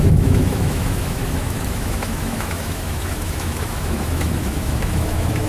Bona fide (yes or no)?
no